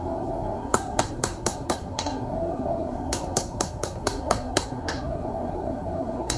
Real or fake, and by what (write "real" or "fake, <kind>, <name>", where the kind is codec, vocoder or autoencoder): fake, codec, SNAC